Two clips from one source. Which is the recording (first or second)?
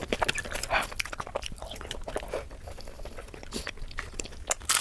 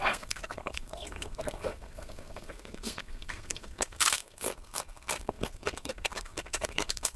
first